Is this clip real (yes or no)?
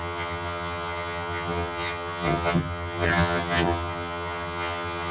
no